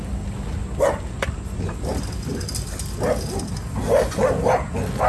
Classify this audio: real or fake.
real